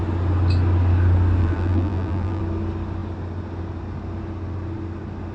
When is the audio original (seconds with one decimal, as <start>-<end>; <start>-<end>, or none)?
0.0-1.4; 2.4-5.3